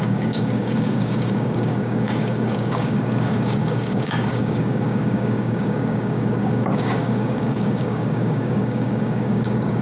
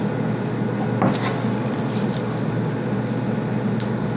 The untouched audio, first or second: second